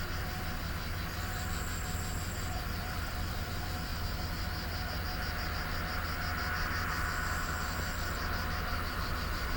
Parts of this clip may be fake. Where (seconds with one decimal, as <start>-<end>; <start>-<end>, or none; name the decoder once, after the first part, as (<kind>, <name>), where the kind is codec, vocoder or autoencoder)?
0.0-3.9 (vocoder, BigVGAN v2); 8.9-9.6